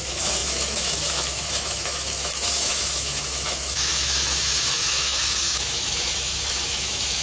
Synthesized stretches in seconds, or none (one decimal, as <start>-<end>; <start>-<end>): 0.0-7.2